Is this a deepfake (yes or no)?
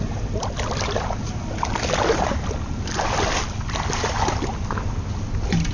no